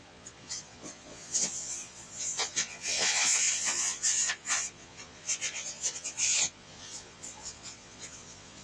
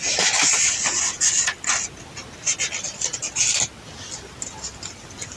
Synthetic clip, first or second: first